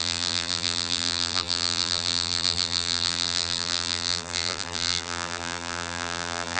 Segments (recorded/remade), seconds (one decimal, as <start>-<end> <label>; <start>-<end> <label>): 0.0-6.6 remade